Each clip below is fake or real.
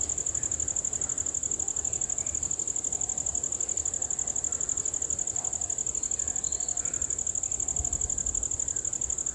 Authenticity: real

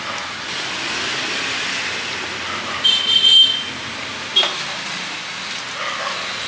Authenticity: real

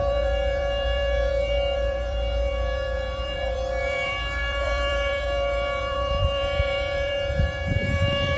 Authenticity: fake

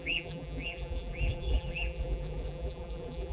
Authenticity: fake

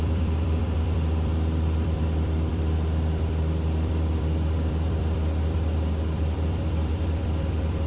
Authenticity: fake